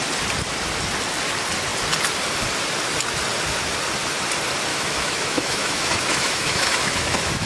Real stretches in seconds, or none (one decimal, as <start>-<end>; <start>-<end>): 0.0-4.7